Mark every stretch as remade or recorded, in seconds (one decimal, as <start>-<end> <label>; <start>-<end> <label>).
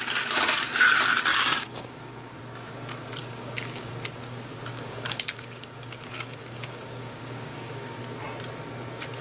0.0-1.3 recorded; 1.3-2.4 remade; 2.4-3.2 recorded; 3.2-3.9 remade; 3.9-4.7 recorded; 4.7-8.0 remade; 8.0-9.2 recorded